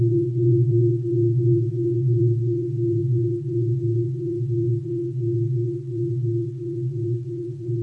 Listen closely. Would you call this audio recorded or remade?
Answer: remade